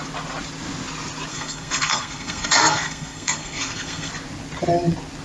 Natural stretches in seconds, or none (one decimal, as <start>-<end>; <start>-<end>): 0.0-1.3; 4.1-5.2